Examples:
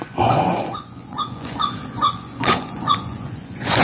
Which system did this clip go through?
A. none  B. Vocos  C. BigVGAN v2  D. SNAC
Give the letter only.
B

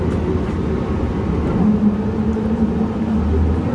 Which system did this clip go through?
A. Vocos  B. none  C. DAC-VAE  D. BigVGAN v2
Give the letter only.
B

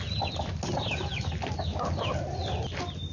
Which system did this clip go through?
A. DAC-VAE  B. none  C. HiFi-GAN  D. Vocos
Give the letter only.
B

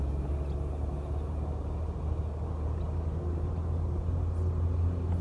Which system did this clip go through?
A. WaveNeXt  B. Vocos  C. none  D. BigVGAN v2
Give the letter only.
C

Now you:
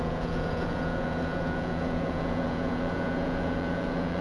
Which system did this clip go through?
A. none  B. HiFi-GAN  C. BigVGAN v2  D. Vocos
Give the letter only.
D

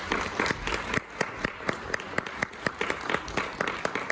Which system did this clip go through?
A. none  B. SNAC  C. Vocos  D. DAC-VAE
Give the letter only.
A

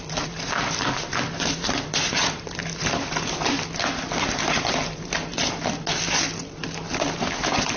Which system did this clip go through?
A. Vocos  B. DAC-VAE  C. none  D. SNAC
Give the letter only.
C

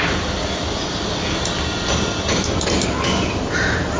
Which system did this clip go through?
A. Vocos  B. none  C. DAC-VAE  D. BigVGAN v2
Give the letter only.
B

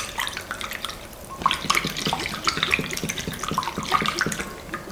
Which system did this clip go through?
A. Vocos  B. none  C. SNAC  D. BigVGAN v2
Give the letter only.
B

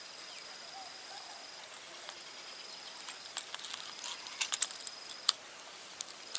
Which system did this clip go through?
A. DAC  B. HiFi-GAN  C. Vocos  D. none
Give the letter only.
D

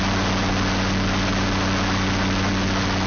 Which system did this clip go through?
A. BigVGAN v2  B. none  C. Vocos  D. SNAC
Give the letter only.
B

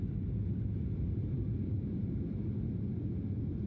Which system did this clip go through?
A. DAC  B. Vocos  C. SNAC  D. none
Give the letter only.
D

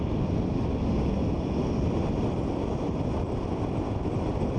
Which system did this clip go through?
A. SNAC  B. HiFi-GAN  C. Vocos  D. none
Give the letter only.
D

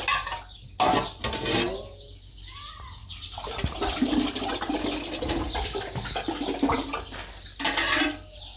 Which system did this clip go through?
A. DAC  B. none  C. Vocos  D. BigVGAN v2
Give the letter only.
B